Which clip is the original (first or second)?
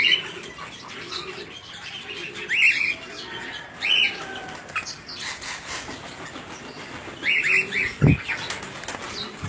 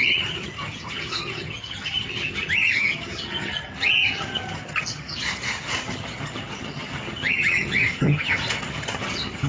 first